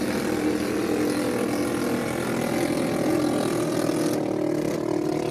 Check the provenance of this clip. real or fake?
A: real